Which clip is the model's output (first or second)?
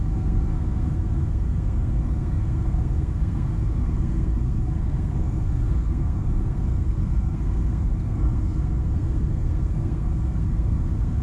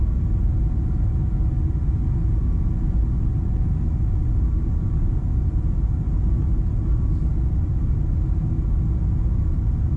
first